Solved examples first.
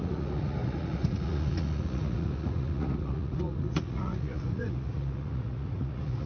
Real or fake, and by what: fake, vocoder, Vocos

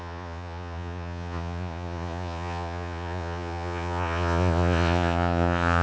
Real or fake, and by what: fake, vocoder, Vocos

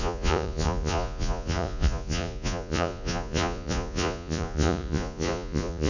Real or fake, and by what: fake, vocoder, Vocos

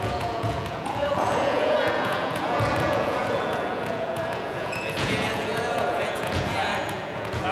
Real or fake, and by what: fake, vocoder, Vocos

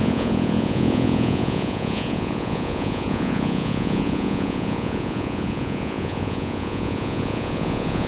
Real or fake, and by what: fake, vocoder, Vocos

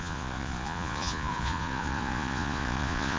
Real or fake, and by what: fake, vocoder, Vocos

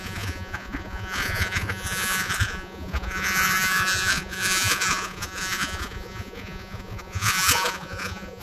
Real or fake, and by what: fake, vocoder, Vocos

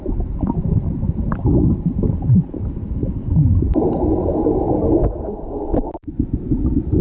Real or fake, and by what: real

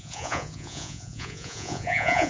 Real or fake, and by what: fake, vocoder, Vocos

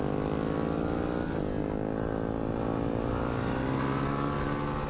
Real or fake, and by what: real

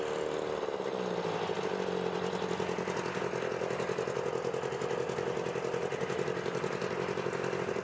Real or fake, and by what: real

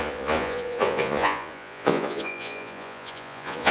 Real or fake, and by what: fake, vocoder, Vocos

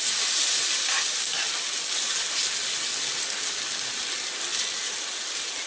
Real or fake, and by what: real